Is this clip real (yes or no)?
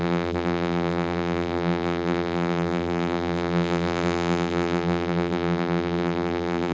no